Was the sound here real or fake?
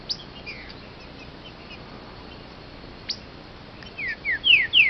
real